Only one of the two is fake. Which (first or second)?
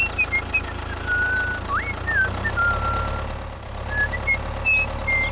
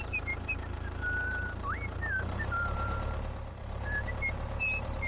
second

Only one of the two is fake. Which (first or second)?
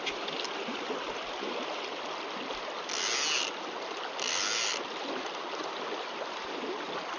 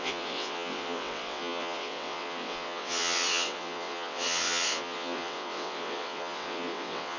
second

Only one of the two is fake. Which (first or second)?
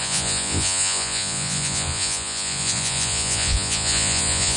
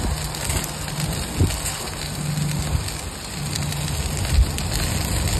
first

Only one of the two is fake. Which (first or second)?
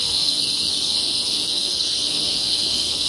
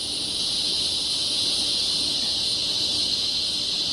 first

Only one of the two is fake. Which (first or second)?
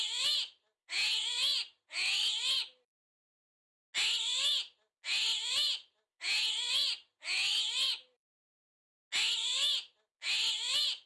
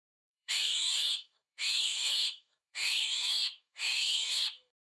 second